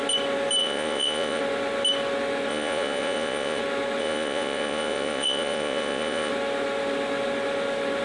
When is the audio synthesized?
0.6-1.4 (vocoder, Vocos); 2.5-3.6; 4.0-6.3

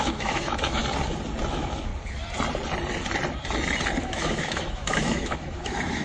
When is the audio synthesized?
0.0-0.8 (autoencoder, DAC-VAE); 1.5-1.9; 4.0-6.0

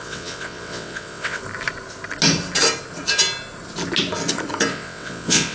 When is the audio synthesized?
0.0-1.4 (vocoder, WaveNeXt); 4.7-5.5

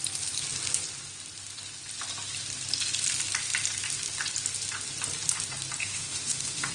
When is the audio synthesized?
5.8-6.7 (autoencoder, DAC-VAE)

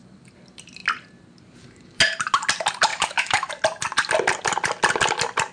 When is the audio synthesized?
2.9-3.5 (autoencoder, DAC-VAE)

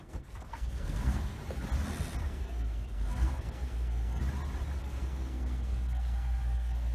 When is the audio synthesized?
0.0-1.4 (codec, SNAC); 2.2-4.2; 4.8-6.9

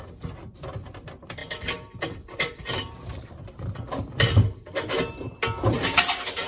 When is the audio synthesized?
1.4-5.3 (vocoder, BigVGAN v2)